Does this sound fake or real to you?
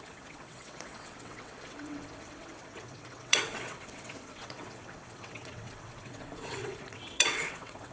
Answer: fake